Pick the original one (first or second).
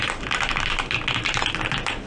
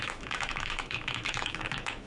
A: first